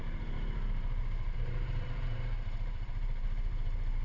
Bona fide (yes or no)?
no